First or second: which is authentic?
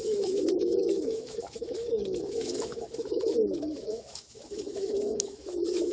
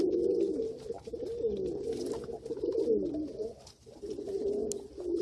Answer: second